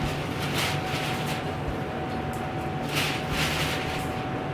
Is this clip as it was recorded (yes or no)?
yes